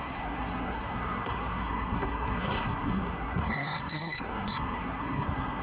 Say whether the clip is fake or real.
fake